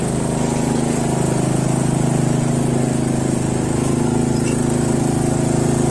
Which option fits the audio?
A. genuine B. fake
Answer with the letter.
A